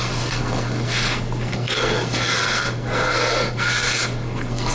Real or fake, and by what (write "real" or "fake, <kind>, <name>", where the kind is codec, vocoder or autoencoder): fake, codec, SNAC